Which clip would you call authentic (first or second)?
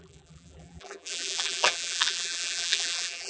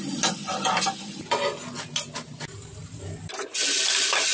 second